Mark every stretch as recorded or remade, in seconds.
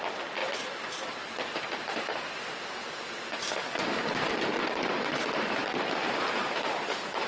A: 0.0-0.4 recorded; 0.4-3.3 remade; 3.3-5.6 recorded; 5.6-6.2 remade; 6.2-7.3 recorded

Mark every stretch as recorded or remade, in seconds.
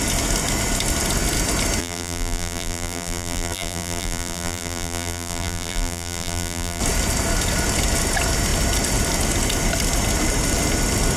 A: 0.0-1.8 recorded; 1.8-6.8 remade; 6.8-11.2 recorded